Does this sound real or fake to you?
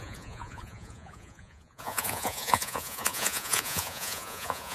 fake